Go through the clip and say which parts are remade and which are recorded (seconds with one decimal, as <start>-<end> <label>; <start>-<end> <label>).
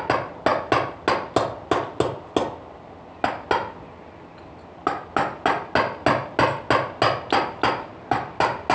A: 0.0-8.7 recorded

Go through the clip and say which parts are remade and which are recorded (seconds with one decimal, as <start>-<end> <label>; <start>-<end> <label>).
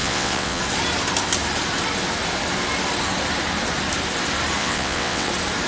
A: 0.0-0.6 remade; 0.6-4.6 recorded; 4.6-5.3 remade; 5.3-5.7 recorded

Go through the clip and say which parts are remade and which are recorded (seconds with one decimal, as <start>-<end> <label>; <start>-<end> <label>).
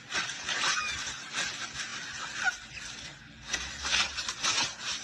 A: 0.0-5.0 recorded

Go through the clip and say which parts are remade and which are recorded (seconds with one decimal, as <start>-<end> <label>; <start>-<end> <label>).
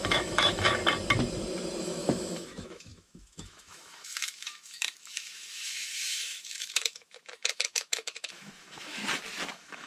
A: 0.0-0.8 remade; 0.8-1.8 recorded; 1.8-9.0 remade; 9.0-9.5 recorded; 9.5-9.9 remade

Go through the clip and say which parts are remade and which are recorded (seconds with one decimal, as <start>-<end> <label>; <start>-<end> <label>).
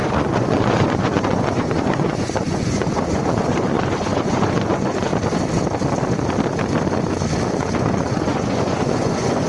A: 0.0-5.1 remade; 5.1-7.5 recorded; 7.5-9.5 remade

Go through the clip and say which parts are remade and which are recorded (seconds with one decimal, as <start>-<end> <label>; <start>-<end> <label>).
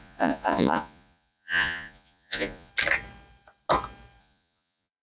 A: 0.0-2.7 remade; 2.7-4.2 recorded; 4.2-5.0 remade